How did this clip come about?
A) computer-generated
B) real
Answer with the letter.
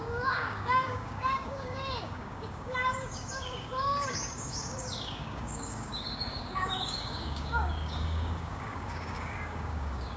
A